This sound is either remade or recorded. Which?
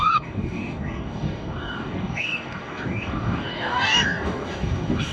remade